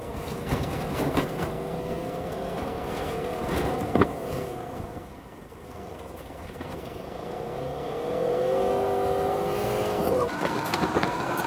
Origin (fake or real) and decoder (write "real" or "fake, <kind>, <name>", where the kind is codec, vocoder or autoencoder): fake, codec, SNAC